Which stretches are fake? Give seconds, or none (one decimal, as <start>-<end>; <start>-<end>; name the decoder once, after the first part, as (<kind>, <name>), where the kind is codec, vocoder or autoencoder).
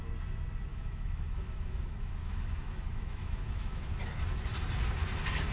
0.7-4.0 (autoencoder, DAC-VAE)